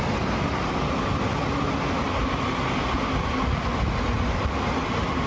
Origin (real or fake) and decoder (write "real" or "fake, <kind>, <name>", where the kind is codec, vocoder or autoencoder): real